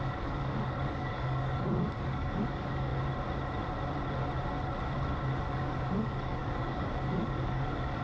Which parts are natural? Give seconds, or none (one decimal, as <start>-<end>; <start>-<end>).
2.9-5.4